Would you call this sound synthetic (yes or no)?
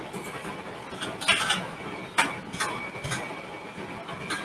no